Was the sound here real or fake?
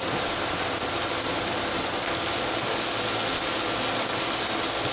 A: real